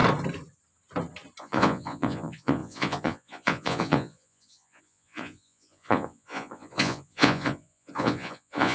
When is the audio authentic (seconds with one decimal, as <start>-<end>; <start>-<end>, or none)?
0.0-1.4